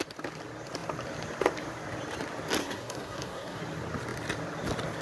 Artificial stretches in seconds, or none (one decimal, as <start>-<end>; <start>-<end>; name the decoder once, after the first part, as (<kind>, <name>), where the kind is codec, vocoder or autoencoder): 2.6-3.6 (codec, SNAC)